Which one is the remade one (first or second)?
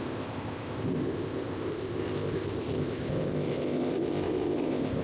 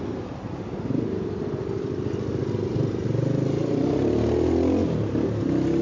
first